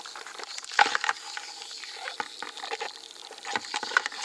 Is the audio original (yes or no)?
yes